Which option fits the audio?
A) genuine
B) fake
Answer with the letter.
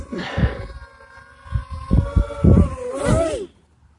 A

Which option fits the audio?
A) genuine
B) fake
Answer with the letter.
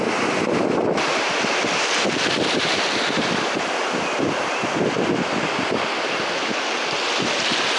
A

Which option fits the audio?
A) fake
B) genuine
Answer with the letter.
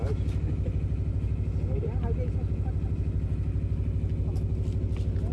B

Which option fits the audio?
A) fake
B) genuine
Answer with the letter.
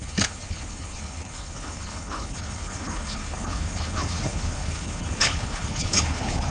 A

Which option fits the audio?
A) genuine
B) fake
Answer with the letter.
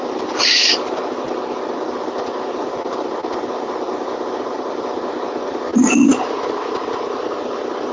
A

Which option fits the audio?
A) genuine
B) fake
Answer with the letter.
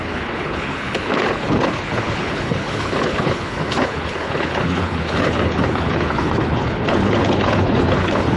B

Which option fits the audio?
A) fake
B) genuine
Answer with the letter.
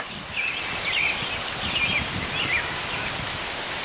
B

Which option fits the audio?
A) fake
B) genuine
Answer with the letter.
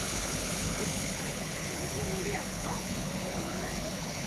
A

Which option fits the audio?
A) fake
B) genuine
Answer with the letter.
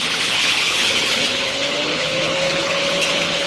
A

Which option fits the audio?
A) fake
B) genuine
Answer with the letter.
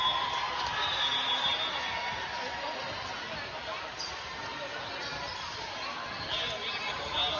B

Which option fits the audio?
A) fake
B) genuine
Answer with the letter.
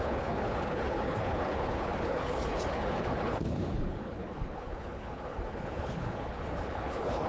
A